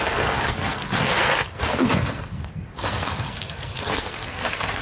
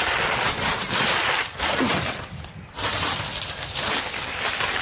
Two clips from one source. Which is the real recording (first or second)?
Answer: second